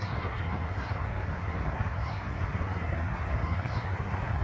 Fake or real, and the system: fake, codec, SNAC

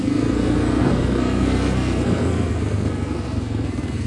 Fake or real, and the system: fake, codec, SNAC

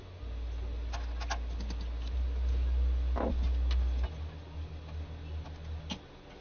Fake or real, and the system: real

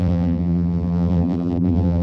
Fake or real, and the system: fake, vocoder, BigVGAN v2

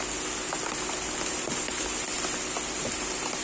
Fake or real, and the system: real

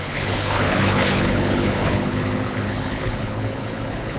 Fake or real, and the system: fake, codec, HILCodec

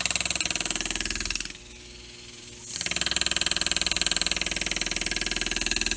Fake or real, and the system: real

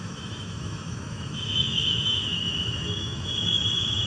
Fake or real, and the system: fake, autoencoder, DAC-VAE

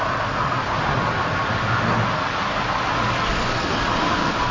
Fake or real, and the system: real